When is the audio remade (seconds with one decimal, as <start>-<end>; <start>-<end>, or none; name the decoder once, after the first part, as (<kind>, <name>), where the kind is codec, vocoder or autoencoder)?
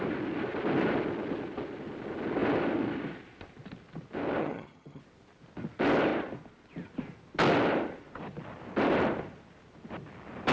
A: 4.4-5.0 (vocoder, HiFi-GAN)